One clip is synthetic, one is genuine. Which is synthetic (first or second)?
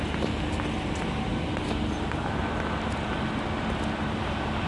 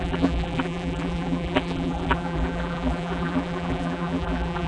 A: second